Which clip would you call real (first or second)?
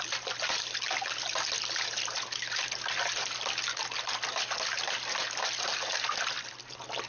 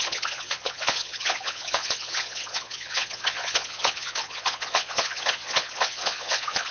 first